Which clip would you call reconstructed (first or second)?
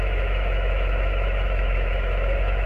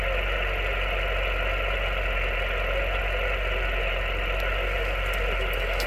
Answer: first